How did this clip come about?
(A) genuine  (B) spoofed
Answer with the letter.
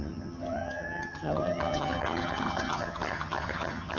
B